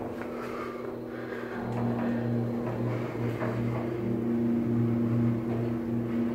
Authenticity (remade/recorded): recorded